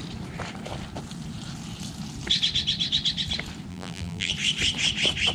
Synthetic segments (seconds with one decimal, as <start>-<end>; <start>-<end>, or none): 3.7-4.3